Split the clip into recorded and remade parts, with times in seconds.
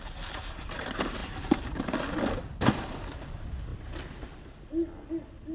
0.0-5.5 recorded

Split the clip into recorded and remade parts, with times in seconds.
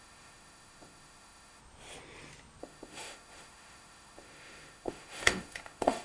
0.0-1.6 remade; 1.6-2.6 recorded; 2.6-6.0 remade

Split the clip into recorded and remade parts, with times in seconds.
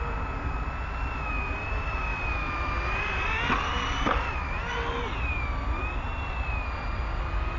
0.0-7.6 recorded